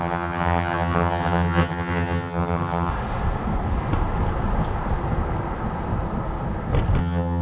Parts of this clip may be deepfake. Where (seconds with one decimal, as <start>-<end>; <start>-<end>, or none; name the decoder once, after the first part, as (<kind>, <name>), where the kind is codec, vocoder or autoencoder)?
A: 0.0-2.9 (vocoder, HiFi-GAN); 7.0-7.4

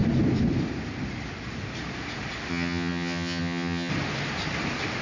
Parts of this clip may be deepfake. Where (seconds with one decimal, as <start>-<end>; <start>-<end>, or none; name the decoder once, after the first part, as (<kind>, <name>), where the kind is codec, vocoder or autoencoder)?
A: 2.5-3.9 (vocoder, HiFi-GAN)

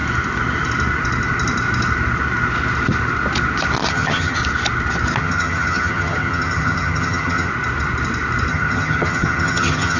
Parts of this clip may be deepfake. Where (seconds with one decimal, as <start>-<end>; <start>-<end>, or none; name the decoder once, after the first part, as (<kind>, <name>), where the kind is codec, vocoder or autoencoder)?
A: 3.9-4.4 (vocoder, HiFi-GAN); 5.2-7.5; 8.5-10.0

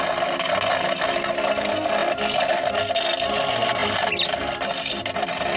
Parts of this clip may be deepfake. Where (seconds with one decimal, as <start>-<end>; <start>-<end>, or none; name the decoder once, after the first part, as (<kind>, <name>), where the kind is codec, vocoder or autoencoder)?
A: none